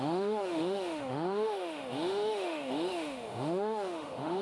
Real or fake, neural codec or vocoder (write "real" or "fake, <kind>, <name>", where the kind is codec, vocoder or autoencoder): fake, autoencoder, DAC-VAE